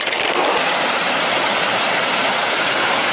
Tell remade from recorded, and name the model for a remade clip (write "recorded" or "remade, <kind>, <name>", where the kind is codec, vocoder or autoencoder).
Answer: recorded